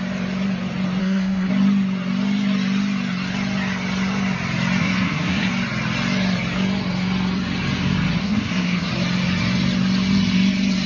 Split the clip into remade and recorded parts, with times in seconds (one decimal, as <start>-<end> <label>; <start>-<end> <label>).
0.0-1.0 recorded; 1.0-1.5 remade; 1.5-4.8 recorded; 4.8-5.5 remade; 5.5-8.2 recorded; 8.2-8.9 remade; 8.9-10.9 recorded